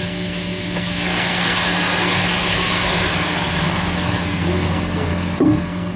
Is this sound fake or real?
fake